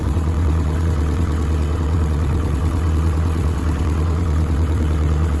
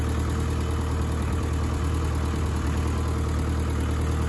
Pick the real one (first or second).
second